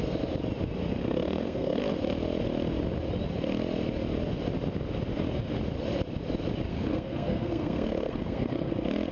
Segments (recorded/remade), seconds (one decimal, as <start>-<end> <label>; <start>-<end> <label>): 0.0-1.0 recorded; 1.0-1.8 remade; 1.8-6.7 recorded; 6.7-8.7 remade; 8.7-9.1 recorded